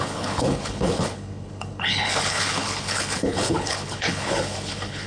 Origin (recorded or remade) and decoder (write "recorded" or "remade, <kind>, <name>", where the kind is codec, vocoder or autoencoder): remade, codec, HILCodec